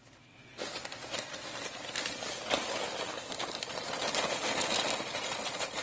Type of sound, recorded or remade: recorded